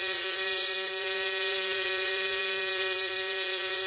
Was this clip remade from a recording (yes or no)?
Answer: yes